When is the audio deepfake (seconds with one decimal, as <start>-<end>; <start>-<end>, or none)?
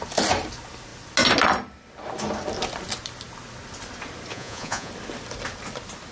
4.3-4.9